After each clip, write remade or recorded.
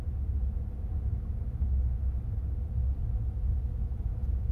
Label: recorded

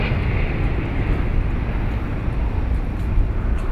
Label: recorded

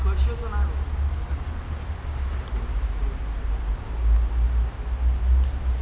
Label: recorded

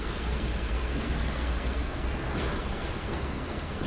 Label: remade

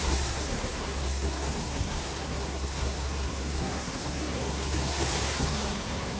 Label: remade